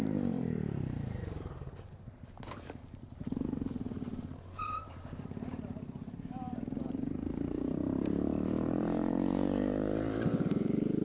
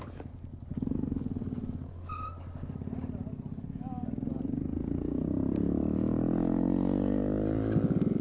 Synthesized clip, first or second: first